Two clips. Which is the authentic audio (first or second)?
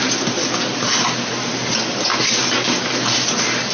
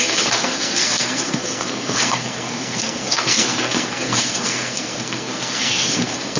first